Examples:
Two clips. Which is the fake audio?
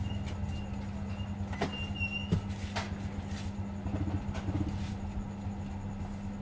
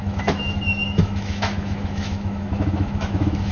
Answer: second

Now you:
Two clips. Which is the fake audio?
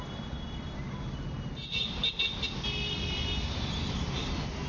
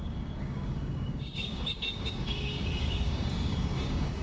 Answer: second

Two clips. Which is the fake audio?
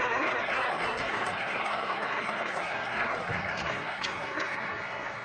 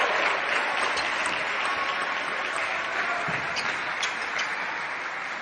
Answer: first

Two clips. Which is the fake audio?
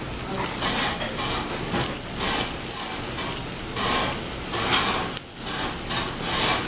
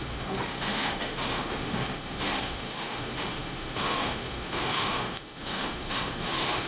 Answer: second